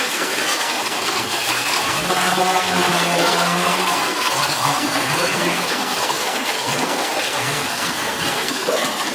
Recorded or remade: remade